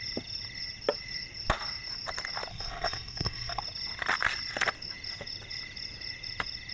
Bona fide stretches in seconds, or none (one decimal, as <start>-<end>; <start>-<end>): 0.0-2.5; 3.6-6.7